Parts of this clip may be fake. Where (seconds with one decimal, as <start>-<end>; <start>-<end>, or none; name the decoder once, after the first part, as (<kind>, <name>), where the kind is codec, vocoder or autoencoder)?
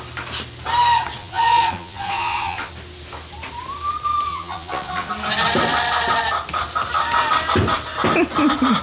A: 1.2-2.7 (vocoder, Vocos); 4.3-5.1